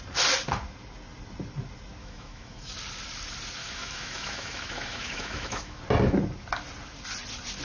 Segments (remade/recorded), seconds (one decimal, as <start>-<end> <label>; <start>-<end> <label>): 0.0-2.0 recorded; 2.0-2.7 remade; 2.7-3.6 recorded; 3.6-5.8 remade; 5.8-7.6 recorded